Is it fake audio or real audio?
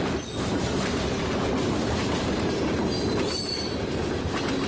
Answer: fake